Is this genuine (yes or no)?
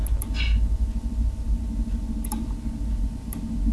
yes